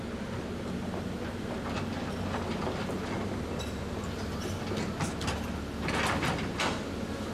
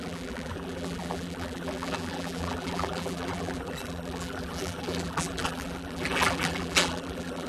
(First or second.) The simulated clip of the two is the second